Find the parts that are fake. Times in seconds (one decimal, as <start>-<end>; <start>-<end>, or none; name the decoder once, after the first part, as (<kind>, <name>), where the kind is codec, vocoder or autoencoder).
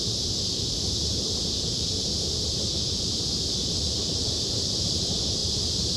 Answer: 0.0-6.0 (vocoder, BigVGAN v2)